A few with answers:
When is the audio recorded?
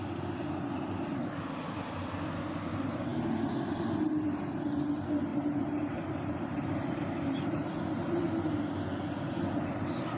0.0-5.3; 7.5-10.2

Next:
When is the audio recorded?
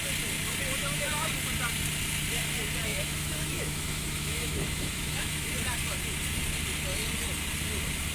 0.0-0.8; 1.3-2.9; 5.5-8.1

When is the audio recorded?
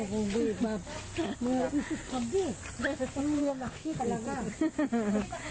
0.0-3.4; 4.0-5.5